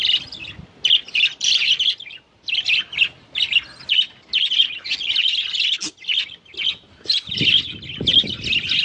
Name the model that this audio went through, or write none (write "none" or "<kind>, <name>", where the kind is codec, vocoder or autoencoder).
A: none